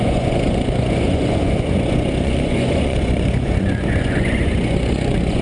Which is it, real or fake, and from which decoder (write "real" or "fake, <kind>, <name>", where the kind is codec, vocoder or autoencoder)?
fake, vocoder, Vocos